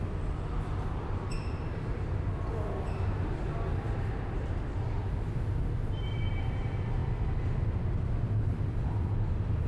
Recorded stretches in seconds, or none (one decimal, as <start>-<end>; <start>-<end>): 0.0-9.7